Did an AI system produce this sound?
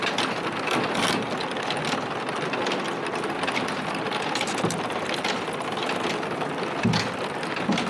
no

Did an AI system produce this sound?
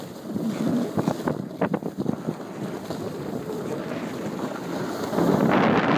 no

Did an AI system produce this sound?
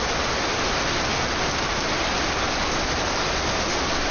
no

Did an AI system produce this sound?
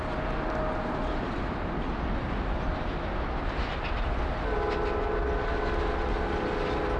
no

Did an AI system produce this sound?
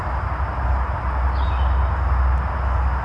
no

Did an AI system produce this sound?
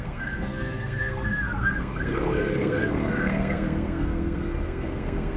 yes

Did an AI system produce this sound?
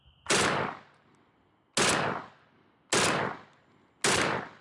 no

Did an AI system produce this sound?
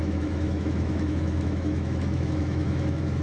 yes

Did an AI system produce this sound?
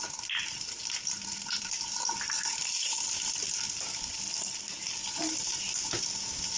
no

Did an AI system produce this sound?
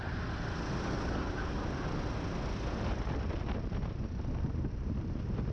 no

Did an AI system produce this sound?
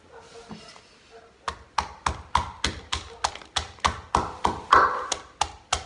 no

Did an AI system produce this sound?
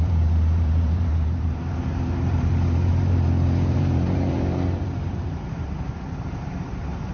yes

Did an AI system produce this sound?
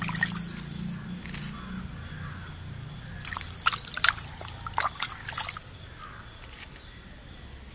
no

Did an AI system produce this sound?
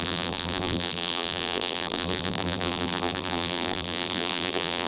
yes